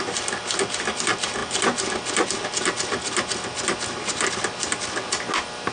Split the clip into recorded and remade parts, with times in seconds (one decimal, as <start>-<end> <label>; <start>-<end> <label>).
0.0-5.7 recorded